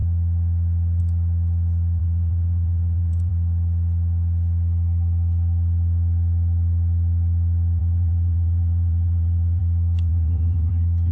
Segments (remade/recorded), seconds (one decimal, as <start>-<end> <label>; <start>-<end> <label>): 0.0-2.0 recorded; 2.0-3.3 remade; 3.3-7.8 recorded; 7.8-9.6 remade; 9.6-10.1 recorded; 10.1-10.7 remade; 10.7-11.1 recorded